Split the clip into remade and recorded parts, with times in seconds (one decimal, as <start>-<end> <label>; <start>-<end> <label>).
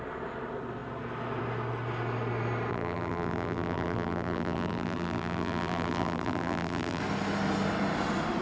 0.0-2.7 recorded; 2.7-7.0 remade; 7.0-8.4 recorded